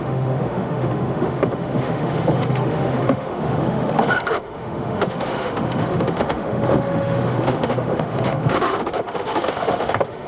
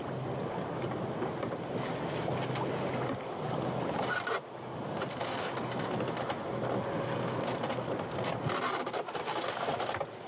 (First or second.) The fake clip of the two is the first